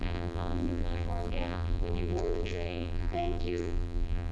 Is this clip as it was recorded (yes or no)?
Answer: no